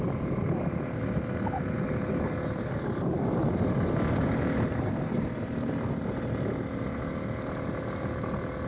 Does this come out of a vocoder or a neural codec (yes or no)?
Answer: no